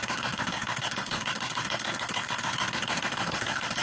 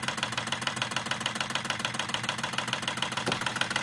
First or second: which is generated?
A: first